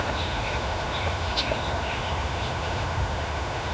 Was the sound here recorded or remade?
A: remade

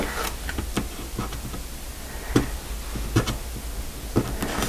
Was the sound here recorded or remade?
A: recorded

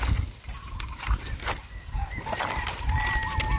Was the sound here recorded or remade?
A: recorded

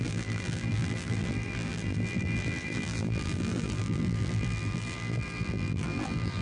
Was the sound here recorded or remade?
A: remade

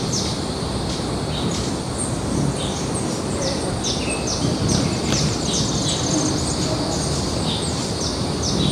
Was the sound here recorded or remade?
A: recorded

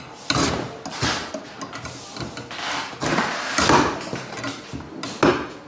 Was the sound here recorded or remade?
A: recorded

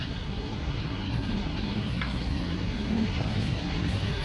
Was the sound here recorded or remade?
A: remade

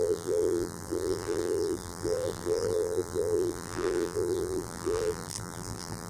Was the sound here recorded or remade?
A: remade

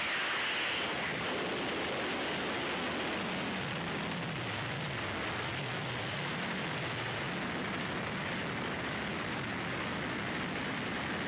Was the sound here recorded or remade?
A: recorded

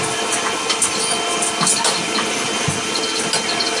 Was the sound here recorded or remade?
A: recorded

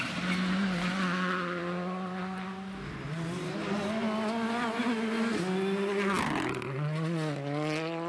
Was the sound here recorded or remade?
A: recorded